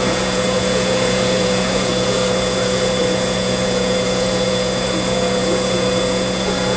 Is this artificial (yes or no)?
yes